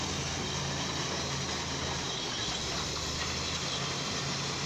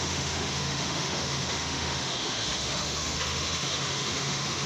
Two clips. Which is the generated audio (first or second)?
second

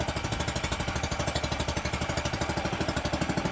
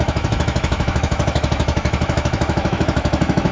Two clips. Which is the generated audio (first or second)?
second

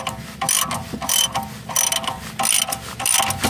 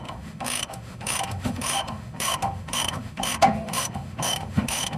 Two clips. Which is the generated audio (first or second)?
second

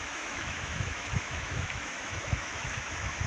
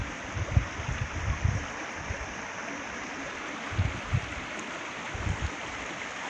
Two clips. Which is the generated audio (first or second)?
first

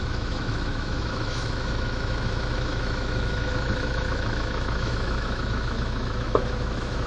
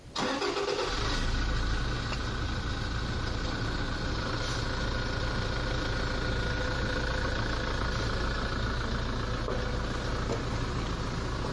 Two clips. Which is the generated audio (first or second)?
first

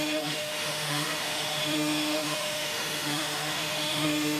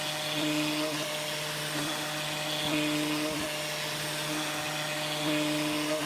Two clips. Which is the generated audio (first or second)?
first